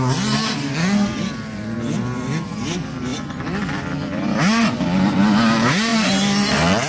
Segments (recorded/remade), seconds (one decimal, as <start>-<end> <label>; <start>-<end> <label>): 0.0-6.9 recorded